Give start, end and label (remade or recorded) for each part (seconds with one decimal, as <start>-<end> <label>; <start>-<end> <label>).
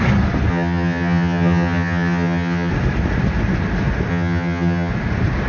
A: 0.0-0.5 recorded; 0.5-2.7 remade; 2.7-4.1 recorded; 4.1-4.9 remade; 4.9-5.5 recorded